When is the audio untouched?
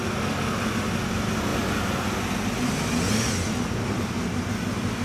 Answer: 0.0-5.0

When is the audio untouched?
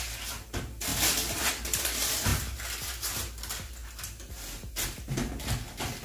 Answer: 0.0-6.0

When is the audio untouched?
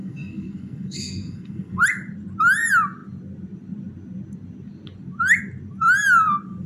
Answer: 1.8-6.7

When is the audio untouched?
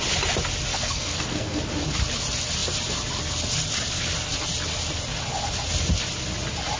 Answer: 0.0-0.7; 1.6-6.8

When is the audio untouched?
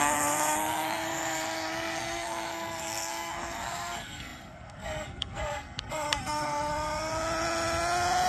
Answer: 7.1-8.3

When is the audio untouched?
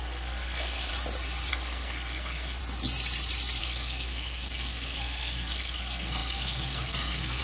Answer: 0.9-1.5; 2.6-3.6